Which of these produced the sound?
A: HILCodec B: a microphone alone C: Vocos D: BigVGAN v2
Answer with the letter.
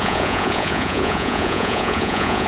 C